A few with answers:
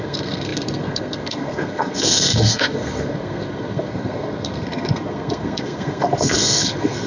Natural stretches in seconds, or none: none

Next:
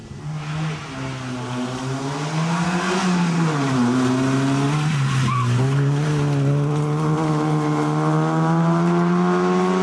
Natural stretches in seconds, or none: 0.0-9.8

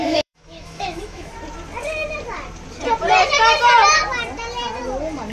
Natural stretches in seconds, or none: 1.3-5.3

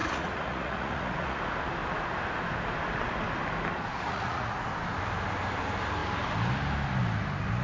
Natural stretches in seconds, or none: 1.4-3.9; 4.6-7.6

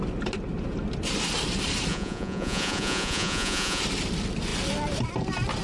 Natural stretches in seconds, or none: 0.0-1.9; 3.8-5.6